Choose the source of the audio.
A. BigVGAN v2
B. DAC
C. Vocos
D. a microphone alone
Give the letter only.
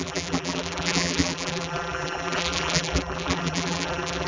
A